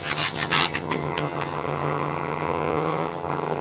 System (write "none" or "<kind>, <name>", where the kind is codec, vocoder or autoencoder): vocoder, HiFi-GAN